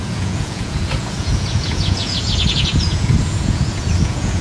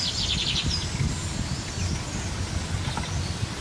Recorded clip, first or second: second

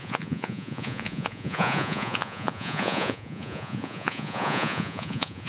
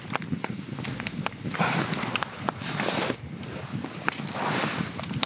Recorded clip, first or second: second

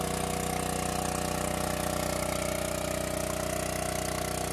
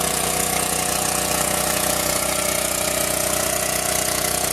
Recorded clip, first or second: first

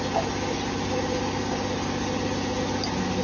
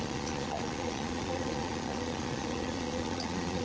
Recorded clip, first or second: first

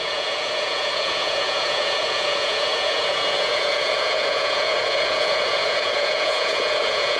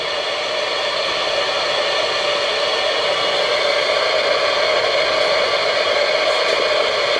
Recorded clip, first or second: second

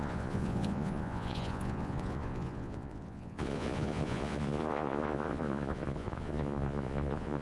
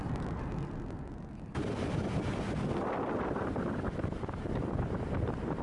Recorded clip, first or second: second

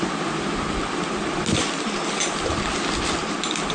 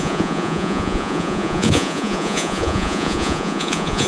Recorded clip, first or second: first